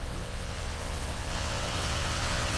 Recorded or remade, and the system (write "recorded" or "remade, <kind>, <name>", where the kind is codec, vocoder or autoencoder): remade, vocoder, WaveNeXt